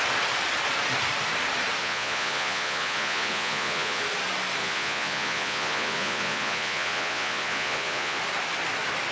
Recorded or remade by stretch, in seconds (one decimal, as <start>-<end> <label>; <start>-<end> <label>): 0.0-1.8 recorded; 1.8-4.0 remade; 4.0-4.6 recorded; 4.6-8.2 remade; 8.2-9.1 recorded